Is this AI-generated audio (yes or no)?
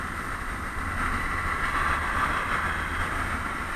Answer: no